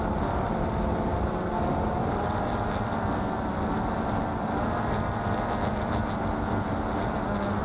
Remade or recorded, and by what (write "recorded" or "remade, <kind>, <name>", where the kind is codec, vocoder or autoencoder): recorded